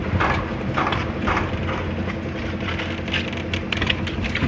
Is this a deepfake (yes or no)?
no